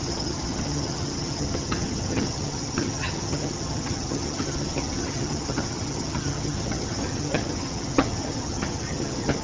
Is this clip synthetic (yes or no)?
yes